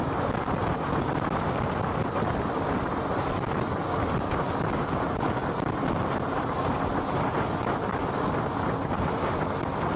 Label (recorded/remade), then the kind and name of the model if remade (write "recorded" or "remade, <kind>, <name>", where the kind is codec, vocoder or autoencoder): recorded